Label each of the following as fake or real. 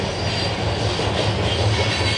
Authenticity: real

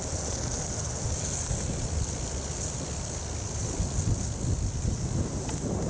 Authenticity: real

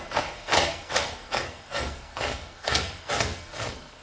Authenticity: fake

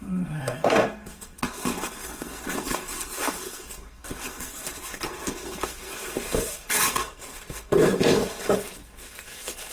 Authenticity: fake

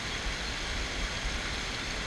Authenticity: real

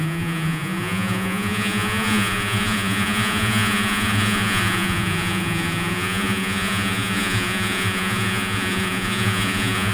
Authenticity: fake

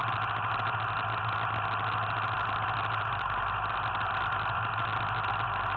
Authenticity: real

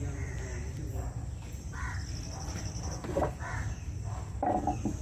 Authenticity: real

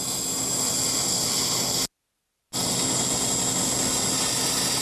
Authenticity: real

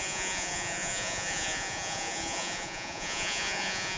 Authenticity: fake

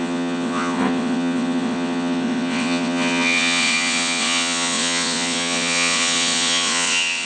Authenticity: fake